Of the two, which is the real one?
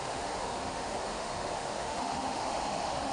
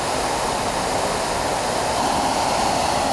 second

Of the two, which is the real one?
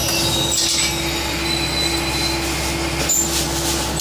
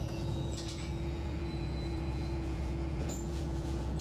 first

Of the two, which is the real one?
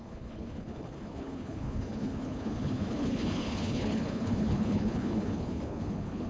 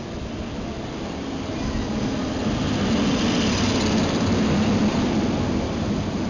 second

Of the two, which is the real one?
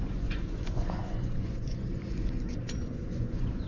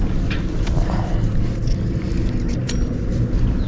second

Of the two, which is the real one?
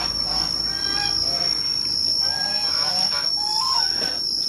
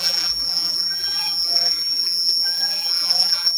first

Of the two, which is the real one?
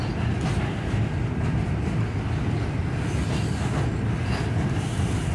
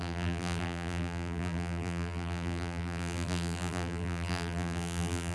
first